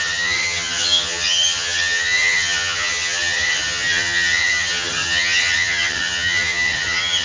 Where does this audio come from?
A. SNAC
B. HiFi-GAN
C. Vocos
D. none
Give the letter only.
B